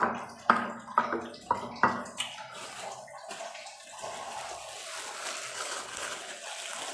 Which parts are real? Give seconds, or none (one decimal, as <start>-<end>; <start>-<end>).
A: 0.0-5.5; 6.3-6.9

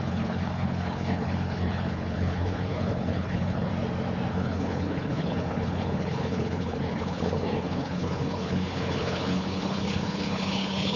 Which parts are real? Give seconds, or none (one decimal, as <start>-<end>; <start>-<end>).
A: 3.7-4.3

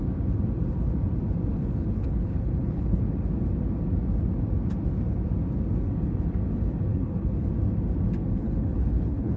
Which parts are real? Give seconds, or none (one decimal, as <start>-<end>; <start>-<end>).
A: 0.0-1.5; 3.0-6.9; 7.5-8.3

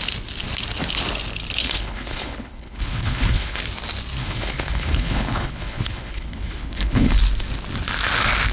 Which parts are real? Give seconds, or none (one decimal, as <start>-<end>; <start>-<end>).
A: 0.0-1.6; 3.6-4.2; 7.2-8.5

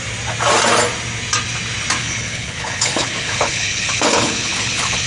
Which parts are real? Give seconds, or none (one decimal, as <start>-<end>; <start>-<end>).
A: 0.0-2.0